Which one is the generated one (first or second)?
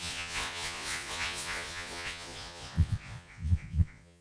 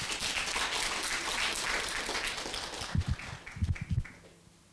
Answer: first